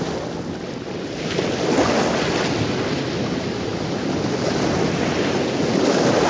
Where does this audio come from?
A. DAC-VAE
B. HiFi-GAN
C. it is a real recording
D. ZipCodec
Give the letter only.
C